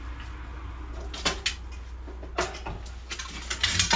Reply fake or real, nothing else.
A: real